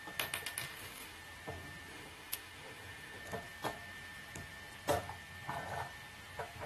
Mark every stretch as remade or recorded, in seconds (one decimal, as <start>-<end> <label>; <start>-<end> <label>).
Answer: 0.0-0.7 recorded; 0.7-1.2 remade; 1.2-1.9 recorded; 1.9-3.2 remade; 3.2-6.7 recorded